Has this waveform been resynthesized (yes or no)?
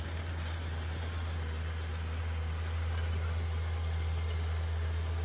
no